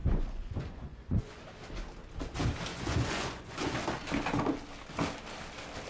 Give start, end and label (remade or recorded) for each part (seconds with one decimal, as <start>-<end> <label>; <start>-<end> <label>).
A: 0.0-1.4 remade; 1.4-2.7 recorded; 2.7-3.7 remade; 3.7-5.9 recorded